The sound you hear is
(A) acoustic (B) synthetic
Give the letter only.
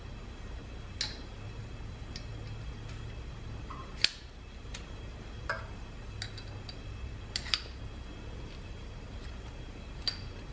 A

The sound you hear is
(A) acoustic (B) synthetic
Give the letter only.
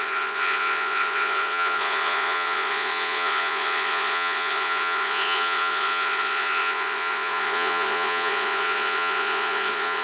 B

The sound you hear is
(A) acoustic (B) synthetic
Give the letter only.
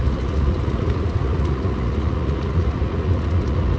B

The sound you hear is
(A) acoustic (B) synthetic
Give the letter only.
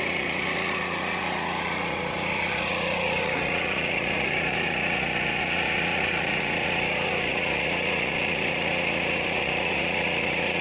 B